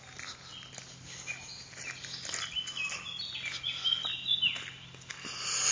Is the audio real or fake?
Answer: real